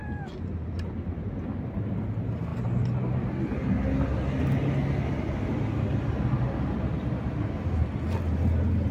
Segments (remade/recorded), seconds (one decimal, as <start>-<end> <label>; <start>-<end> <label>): 0.0-8.9 recorded